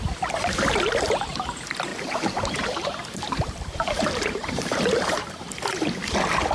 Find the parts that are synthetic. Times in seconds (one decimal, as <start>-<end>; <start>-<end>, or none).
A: 1.9-5.5